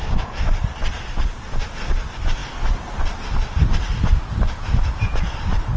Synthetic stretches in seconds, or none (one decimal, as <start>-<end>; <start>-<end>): none